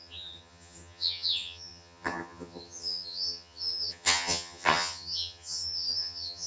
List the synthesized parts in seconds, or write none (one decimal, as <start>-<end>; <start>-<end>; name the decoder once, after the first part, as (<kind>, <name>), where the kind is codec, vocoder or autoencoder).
0.0-6.5 (vocoder, HiFi-GAN)